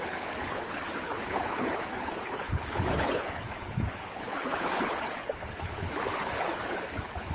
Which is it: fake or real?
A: fake